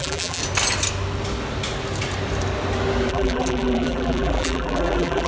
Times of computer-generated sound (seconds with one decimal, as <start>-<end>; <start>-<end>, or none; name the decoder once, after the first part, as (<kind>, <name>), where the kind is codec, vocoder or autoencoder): 0.0-0.4 (vocoder, BigVGAN v2); 3.1-5.3